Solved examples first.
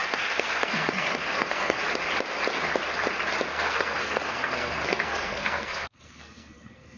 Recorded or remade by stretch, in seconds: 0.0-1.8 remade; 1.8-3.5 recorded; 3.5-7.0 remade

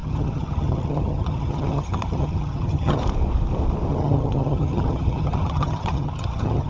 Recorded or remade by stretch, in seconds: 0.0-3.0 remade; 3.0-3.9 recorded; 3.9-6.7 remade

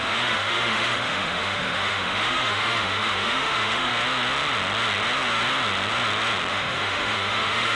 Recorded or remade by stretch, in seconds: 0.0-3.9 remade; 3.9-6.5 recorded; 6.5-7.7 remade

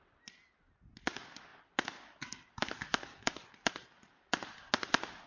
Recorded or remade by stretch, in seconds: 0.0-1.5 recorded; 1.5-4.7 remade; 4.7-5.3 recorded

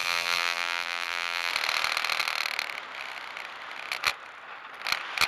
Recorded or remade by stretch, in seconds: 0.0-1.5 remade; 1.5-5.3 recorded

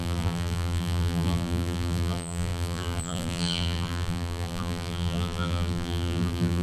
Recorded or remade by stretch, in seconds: 0.0-6.6 remade

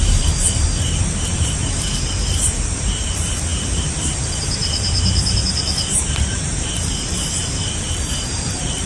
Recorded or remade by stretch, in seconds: 0.0-7.4 remade; 7.4-7.9 recorded; 7.9-8.9 remade

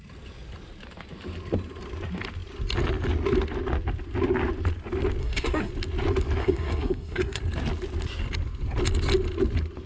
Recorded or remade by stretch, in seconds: 0.0-5.2 recorded; 5.2-5.7 remade; 5.7-6.4 recorded; 6.4-7.4 remade; 7.4-9.9 recorded